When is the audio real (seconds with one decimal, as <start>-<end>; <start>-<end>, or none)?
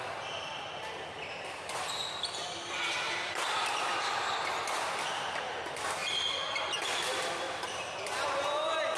0.0-9.0